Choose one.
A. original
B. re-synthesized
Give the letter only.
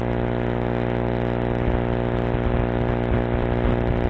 A